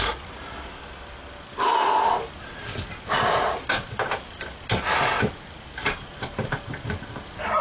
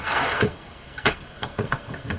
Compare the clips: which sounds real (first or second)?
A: first